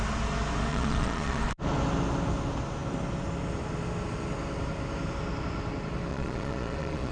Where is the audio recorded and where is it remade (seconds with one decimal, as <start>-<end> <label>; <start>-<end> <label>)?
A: 0.0-0.7 recorded; 0.7-1.4 remade; 1.4-6.1 recorded; 6.1-7.1 remade